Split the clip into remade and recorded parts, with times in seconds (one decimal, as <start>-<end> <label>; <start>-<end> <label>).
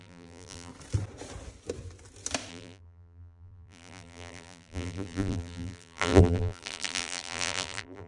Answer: 0.0-0.7 remade; 0.7-2.5 recorded; 2.5-8.1 remade